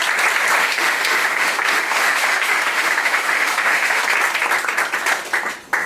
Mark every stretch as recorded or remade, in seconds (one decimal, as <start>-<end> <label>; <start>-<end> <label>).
0.0-0.6 recorded; 0.6-4.0 remade; 4.0-5.9 recorded